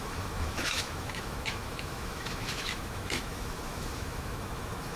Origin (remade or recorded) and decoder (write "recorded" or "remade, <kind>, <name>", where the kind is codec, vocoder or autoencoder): remade, autoencoder, DAC-VAE